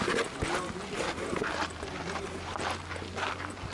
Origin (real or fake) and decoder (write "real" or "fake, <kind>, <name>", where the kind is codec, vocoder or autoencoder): real